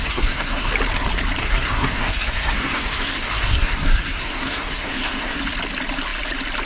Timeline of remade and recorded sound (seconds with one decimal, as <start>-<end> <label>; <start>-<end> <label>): 0.0-0.7 remade; 0.7-1.4 recorded; 1.4-5.4 remade; 5.4-6.7 recorded